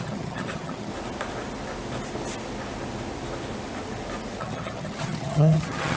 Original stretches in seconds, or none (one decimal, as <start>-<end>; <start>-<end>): 0.9-4.4